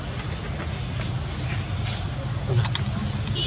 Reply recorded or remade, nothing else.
recorded